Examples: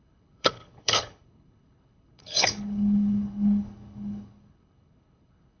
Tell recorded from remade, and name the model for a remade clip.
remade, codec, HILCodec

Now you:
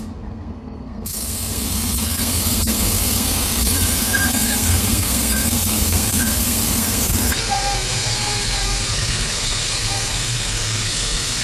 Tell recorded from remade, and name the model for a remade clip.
remade, codec, SNAC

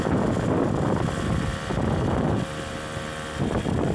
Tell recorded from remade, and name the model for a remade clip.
recorded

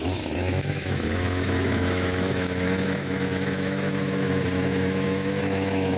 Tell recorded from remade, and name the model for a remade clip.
remade, autoencoder, DAC-VAE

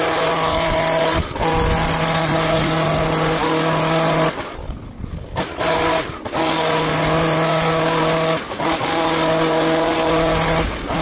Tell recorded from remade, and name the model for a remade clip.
recorded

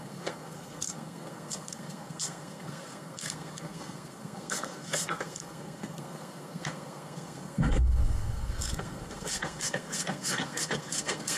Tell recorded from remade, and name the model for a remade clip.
remade, codec, SNAC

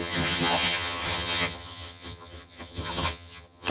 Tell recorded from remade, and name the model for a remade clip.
remade, vocoder, HiFi-GAN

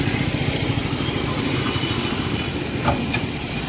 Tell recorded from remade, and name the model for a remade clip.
recorded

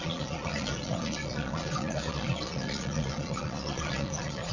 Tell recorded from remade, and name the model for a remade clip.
remade, vocoder, Vocos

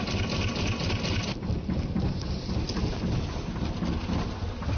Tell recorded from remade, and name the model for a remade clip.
recorded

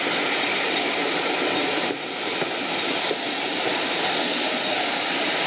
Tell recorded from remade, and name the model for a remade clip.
recorded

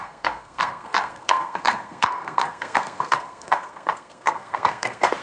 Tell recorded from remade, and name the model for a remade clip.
remade, codec, SNAC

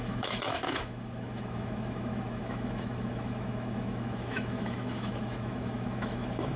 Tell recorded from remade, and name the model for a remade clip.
remade, autoencoder, DAC-VAE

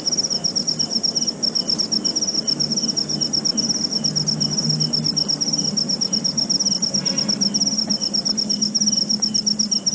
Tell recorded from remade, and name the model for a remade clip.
recorded